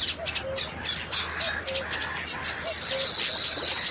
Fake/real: real